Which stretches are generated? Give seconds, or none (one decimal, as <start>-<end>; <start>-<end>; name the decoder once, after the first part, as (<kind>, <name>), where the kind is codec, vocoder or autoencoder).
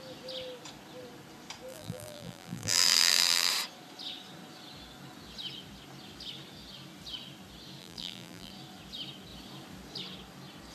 1.7-3.5 (vocoder, BigVGAN v2); 7.8-8.5